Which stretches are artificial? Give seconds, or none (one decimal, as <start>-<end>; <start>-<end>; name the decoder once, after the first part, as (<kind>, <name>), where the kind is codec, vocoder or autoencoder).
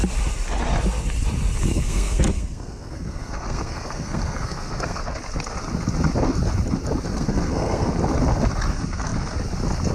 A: 1.7-5.0 (codec, SNAC); 7.1-7.9